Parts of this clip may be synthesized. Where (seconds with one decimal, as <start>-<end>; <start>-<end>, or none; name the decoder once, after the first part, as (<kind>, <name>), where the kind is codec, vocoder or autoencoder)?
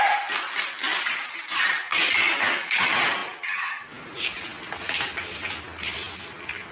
0.0-3.2 (vocoder, BigVGAN v2); 5.2-6.7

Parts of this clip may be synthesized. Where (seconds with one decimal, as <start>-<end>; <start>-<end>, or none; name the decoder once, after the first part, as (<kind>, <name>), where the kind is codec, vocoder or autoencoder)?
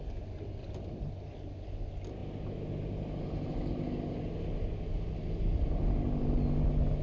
0.6-1.2 (vocoder, BigVGAN v2)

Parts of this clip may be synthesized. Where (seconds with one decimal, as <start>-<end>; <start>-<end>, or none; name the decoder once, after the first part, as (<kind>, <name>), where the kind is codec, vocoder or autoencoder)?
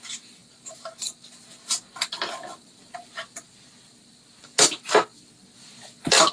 none